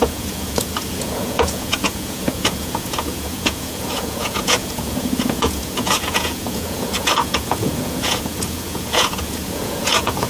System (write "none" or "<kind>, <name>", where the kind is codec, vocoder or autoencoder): vocoder, Vocos